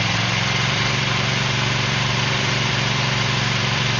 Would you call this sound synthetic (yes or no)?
yes